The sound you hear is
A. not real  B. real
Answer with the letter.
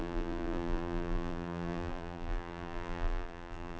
A